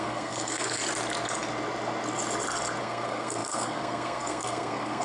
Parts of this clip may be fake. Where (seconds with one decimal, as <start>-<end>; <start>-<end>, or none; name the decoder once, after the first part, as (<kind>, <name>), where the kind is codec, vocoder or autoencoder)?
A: 0.0-0.8 (codec, SNAC); 2.8-5.0